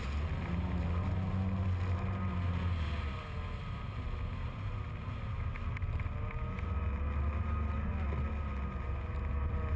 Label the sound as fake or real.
real